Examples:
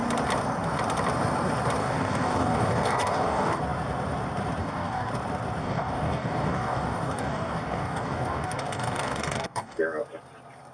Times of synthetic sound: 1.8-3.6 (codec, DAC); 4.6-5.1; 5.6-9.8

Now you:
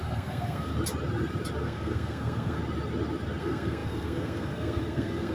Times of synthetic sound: 0.0-0.7 (codec, SNAC); 1.6-2.6; 3.4-5.3

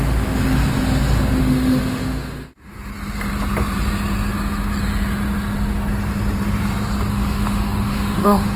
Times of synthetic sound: 0.0-0.4 (autoencoder, DAC-VAE); 1.4-2.9; 7.1-8.6